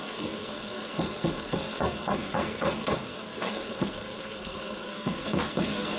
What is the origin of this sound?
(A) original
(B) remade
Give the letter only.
B